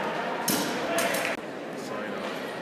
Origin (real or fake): real